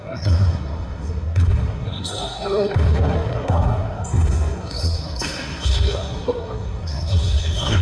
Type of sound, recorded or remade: remade